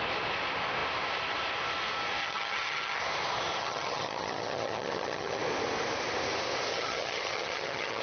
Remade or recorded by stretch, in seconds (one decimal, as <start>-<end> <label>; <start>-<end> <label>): 0.0-2.2 recorded; 2.2-3.0 remade; 3.0-3.6 recorded; 3.6-5.4 remade; 5.4-6.7 recorded; 6.7-8.0 remade